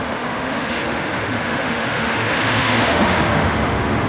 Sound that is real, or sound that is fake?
fake